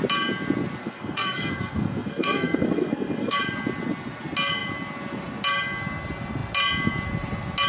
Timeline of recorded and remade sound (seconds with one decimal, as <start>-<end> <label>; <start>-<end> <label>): 0.0-0.8 recorded; 0.8-3.4 remade; 3.4-7.7 recorded